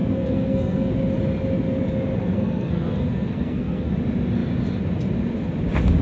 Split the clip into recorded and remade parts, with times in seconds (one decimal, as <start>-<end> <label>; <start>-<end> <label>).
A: 0.0-0.9 remade; 0.9-2.2 recorded; 2.2-3.9 remade; 3.9-6.0 recorded